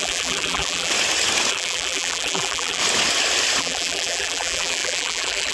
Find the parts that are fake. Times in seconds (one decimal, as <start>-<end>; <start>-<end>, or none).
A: 0.0-0.9; 1.5-2.8; 3.6-5.5